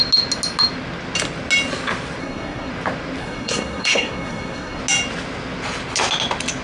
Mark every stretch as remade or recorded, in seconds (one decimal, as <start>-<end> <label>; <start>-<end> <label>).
0.0-2.2 recorded; 2.2-2.7 remade; 2.7-3.2 recorded; 3.2-4.8 remade; 4.8-6.6 recorded